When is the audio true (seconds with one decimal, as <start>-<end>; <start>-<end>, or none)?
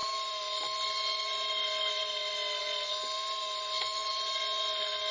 0.0-5.1